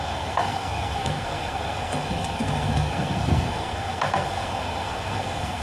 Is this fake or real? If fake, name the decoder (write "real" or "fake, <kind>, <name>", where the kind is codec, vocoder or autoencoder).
fake, codec, SNAC